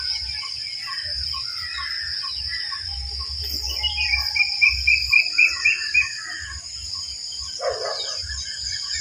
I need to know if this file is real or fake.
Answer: real